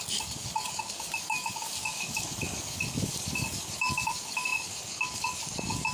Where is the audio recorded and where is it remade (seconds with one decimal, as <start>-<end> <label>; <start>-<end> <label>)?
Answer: 0.0-5.9 remade